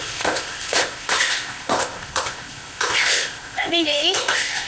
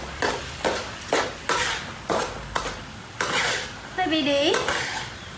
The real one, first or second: second